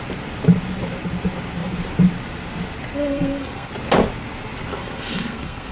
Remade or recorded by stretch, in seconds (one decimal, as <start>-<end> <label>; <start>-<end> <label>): 0.0-3.0 recorded; 3.0-3.7 remade; 3.7-4.7 recorded; 4.7-5.7 remade